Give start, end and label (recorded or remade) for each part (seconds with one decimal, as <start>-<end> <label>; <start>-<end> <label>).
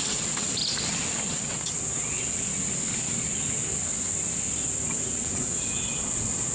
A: 0.0-0.6 remade; 0.6-1.3 recorded; 1.3-2.5 remade; 2.5-4.9 recorded; 4.9-6.5 remade